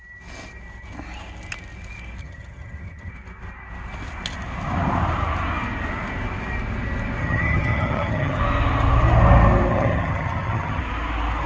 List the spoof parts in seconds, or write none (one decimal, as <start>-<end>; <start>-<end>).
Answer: 2.2-3.1; 7.2-8.4; 9.7-10.8